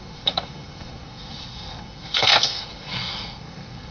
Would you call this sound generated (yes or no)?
yes